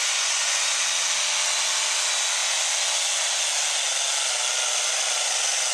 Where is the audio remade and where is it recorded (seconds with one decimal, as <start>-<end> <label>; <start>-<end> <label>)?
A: 0.0-0.8 remade; 0.8-5.7 recorded